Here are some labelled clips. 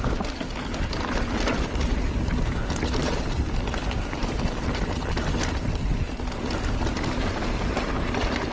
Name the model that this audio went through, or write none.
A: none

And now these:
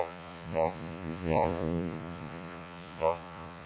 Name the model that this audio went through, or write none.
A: vocoder, Vocos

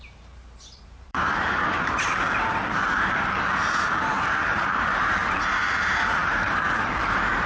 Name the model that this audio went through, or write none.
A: vocoder, BigVGAN v2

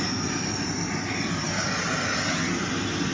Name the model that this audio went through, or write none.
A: none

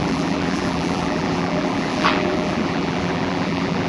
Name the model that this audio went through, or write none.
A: vocoder, BigVGAN v2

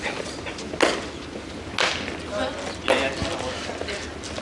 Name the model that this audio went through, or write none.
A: none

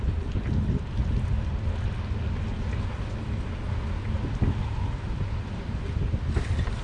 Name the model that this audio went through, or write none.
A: none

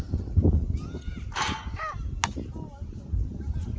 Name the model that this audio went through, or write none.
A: none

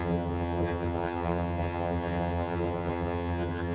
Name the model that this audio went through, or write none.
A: vocoder, HiFi-GAN